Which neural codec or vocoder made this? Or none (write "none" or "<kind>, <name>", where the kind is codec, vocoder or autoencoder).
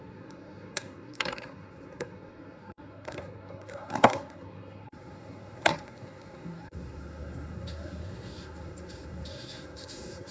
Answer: codec, SNAC